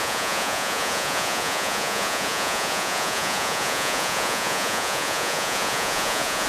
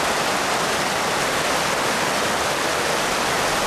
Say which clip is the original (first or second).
second